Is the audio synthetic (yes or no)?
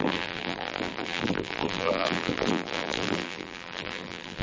yes